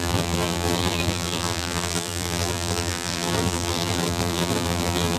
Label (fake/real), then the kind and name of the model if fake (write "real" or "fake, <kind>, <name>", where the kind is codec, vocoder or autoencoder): fake, vocoder, BigVGAN v2